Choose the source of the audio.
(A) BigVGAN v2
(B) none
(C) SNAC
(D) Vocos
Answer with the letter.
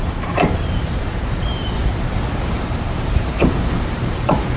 A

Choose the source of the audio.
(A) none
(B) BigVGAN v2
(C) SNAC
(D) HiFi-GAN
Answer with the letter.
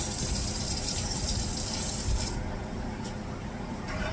B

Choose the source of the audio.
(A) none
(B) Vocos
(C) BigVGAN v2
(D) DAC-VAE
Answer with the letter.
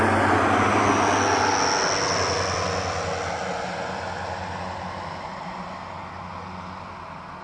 A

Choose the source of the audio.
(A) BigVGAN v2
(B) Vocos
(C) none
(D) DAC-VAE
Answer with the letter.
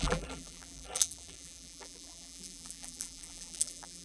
A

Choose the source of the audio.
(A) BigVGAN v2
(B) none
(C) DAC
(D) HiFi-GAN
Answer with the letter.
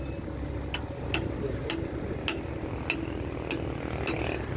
B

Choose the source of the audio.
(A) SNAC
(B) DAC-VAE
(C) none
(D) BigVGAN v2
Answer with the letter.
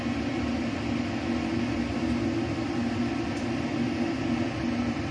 C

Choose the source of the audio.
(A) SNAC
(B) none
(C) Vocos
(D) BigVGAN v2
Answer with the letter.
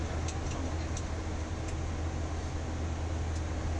B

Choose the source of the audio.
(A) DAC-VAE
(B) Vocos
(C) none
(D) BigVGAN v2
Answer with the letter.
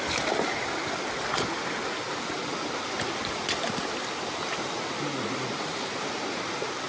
C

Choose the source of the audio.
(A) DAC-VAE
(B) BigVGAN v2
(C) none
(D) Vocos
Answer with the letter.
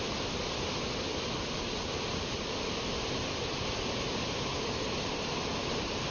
C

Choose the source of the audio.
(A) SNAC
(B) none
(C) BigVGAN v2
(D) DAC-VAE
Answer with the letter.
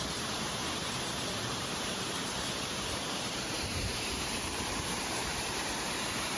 C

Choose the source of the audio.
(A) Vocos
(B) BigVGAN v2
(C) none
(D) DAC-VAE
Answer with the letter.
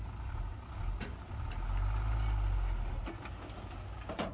C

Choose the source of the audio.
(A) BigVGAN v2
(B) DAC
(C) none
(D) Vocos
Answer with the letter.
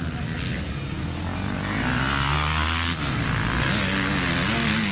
C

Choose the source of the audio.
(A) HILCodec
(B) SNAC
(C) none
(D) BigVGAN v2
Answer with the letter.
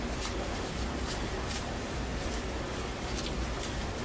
C